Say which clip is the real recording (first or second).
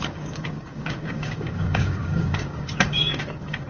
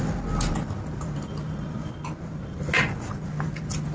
second